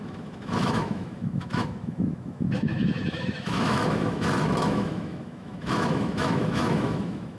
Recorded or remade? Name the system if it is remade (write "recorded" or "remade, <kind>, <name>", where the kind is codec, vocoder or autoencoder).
remade, autoencoder, DAC-VAE